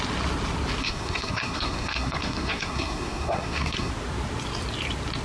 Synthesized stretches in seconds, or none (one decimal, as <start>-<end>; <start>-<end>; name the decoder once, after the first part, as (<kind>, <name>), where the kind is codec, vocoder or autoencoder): 0.8-3.9 (codec, SNAC)